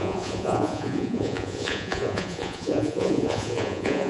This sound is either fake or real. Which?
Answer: fake